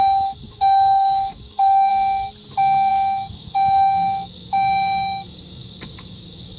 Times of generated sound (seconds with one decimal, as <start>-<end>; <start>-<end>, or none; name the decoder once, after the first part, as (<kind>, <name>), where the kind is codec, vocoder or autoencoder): 0.0-1.9 (codec, DAC); 2.9-6.6